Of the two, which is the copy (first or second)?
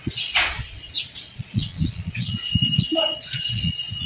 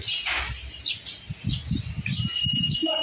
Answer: first